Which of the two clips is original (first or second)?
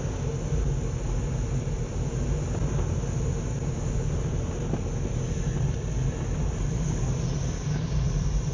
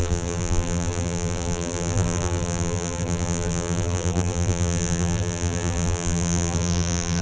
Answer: first